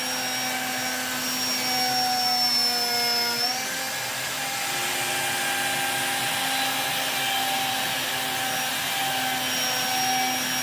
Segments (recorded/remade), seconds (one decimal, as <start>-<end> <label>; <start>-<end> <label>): 0.0-10.6 recorded